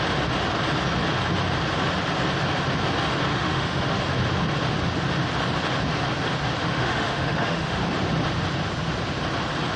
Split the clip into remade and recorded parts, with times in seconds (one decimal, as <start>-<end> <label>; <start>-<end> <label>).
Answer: 0.0-3.3 recorded; 3.3-4.0 remade; 4.0-6.6 recorded; 6.6-7.8 remade; 7.8-9.8 recorded